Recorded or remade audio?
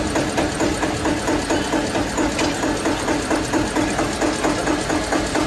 recorded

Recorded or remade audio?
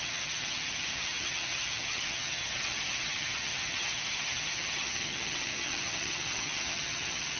remade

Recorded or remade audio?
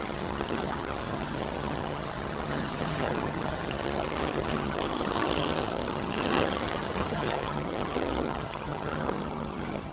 remade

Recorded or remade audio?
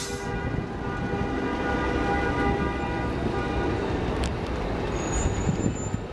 recorded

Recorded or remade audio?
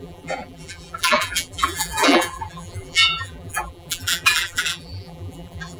remade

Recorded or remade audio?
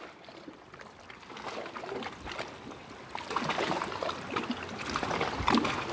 recorded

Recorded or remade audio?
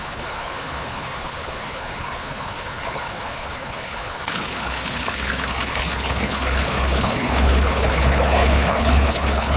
remade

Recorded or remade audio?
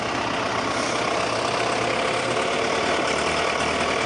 recorded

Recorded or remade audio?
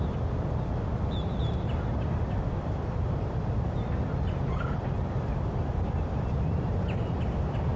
recorded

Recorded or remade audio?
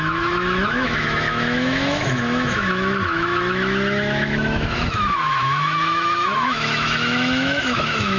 remade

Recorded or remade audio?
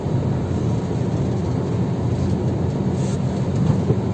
recorded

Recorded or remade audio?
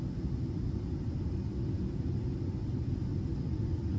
recorded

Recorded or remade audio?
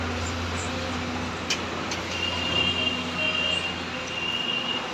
recorded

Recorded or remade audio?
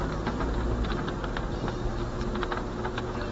recorded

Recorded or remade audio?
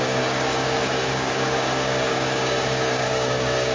remade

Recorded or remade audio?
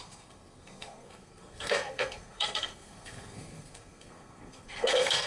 remade